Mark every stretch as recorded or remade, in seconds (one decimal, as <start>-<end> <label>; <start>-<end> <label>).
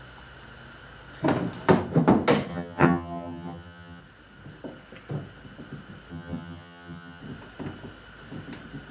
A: 0.0-2.5 recorded; 2.5-4.0 remade; 4.0-6.1 recorded; 6.1-7.2 remade; 7.2-8.9 recorded